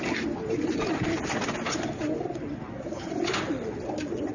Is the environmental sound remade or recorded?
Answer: remade